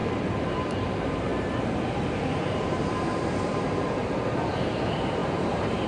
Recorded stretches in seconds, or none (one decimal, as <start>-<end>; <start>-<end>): 0.0-0.5; 1.3-2.5; 4.0-4.5